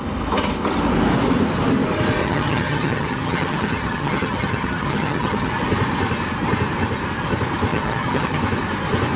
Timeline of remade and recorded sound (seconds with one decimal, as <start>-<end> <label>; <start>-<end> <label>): 0.0-2.2 recorded; 2.2-5.5 remade; 5.5-7.7 recorded; 7.7-8.4 remade; 8.4-9.2 recorded

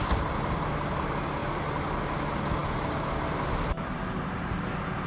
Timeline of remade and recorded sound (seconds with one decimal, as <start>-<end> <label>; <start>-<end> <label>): 0.0-5.1 recorded

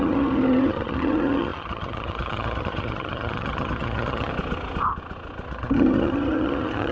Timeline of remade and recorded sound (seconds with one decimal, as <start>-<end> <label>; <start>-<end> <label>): 0.0-4.3 remade; 4.3-5.5 recorded; 5.5-6.9 remade

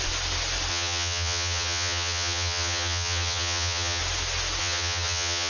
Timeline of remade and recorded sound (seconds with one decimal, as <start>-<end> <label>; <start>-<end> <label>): 0.0-0.7 recorded; 0.7-4.0 remade; 4.0-4.6 recorded; 4.6-5.5 remade

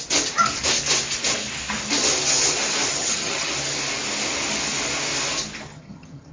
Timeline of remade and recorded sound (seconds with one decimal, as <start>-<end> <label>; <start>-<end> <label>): 0.0-2.9 recorded; 2.9-3.5 remade; 3.5-5.7 recorded; 5.7-6.3 remade

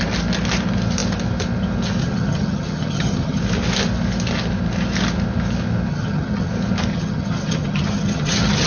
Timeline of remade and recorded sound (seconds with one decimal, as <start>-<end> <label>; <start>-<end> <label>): 0.0-2.0 recorded; 2.0-3.4 remade; 3.4-5.9 recorded; 5.9-6.5 remade; 6.5-6.9 recorded; 6.9-8.7 remade

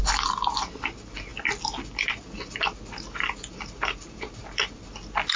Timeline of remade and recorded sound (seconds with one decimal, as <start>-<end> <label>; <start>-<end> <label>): 0.0-5.4 recorded